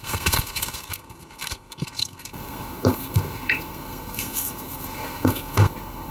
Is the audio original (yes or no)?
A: no